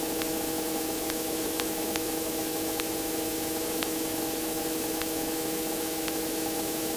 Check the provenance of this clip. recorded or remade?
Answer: remade